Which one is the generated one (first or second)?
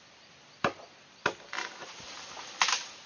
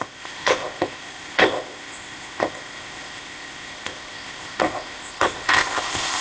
second